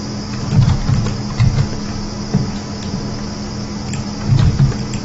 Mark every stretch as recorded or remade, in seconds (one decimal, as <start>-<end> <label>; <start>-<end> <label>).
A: 0.0-5.0 recorded